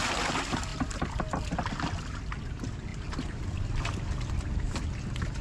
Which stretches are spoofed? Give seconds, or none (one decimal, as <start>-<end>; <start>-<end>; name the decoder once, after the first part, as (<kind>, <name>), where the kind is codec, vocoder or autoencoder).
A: 0.7-1.2 (vocoder, BigVGAN v2)